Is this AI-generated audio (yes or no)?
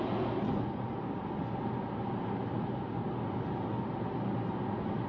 no